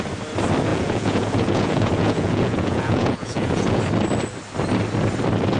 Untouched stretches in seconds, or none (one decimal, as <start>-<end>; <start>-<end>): 0.0-0.7; 3.8-5.6